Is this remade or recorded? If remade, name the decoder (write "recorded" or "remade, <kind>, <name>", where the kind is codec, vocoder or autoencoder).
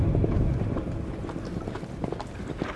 recorded